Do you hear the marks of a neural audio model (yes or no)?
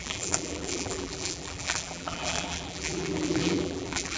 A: yes